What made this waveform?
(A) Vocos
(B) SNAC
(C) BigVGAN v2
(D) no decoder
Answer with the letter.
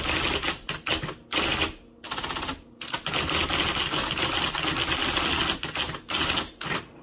D